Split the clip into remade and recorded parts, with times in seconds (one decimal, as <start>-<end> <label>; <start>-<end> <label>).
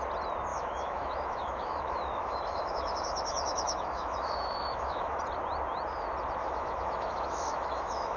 0.0-0.5 recorded; 0.5-5.2 remade; 5.2-6.4 recorded; 6.4-8.2 remade